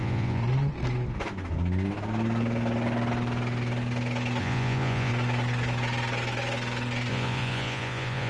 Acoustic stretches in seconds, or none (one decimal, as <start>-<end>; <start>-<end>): 0.4-4.4; 5.1-7.1